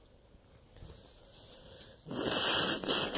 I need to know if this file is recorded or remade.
recorded